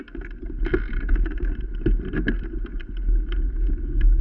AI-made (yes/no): no